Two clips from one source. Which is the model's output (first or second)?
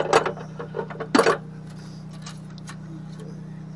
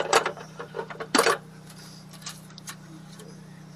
second